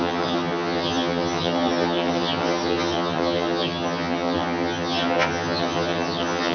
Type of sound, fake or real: fake